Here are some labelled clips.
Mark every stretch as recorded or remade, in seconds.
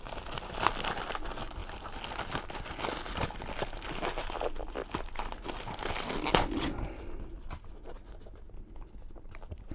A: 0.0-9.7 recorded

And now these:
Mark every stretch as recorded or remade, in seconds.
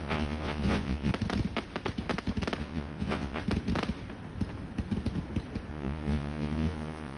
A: 0.0-1.1 remade; 1.1-2.6 recorded; 2.6-3.4 remade; 3.4-5.7 recorded; 5.7-7.2 remade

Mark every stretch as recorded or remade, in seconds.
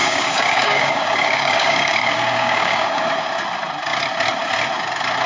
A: 0.0-3.0 remade; 3.0-5.3 recorded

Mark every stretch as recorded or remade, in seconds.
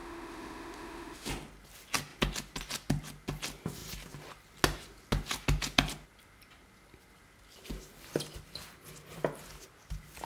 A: 0.0-1.3 remade; 1.3-10.3 recorded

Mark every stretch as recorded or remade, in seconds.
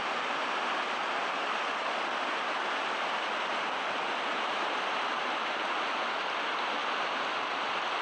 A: 0.0-8.0 recorded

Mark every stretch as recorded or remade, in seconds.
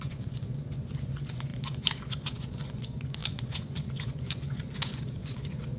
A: 0.0-5.8 remade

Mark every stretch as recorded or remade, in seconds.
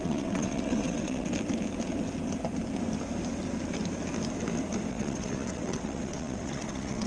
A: 0.0-1.3 remade; 1.3-4.9 recorded; 4.9-7.1 remade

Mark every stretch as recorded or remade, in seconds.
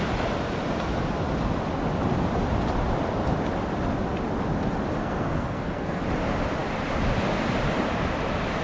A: 0.0-5.0 recorded; 5.0-6.0 remade; 6.0-8.6 recorded